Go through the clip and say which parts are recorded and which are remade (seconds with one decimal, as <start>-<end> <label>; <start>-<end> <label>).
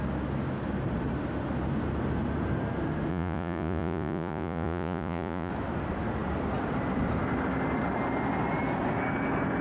0.0-3.1 recorded; 3.1-5.5 remade; 5.5-9.6 recorded